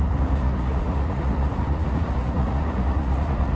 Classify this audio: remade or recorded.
remade